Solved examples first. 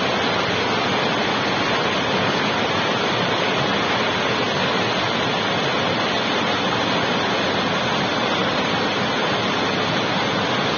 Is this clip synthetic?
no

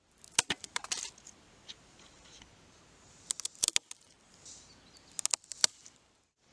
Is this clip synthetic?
no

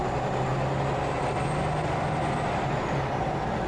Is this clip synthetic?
no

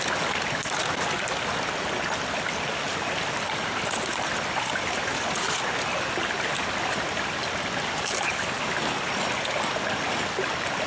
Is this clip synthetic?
no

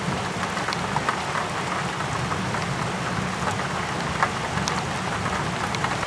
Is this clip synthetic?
no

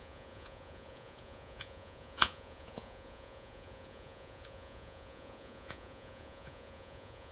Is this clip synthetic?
yes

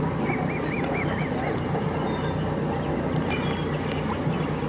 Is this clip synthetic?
no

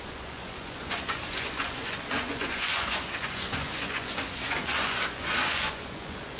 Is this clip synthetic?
yes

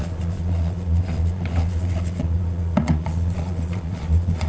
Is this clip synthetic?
yes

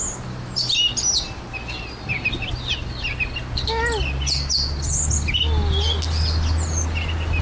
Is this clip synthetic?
no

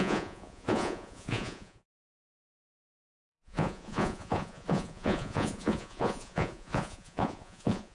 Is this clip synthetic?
yes